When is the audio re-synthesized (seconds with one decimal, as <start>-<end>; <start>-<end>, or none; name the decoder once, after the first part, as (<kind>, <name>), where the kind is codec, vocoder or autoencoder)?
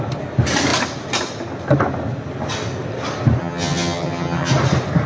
3.4-4.5 (vocoder, HiFi-GAN)